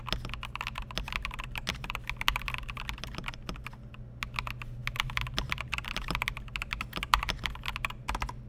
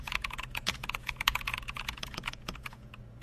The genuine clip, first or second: first